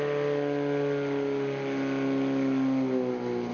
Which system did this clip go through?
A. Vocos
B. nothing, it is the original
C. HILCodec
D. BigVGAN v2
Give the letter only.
B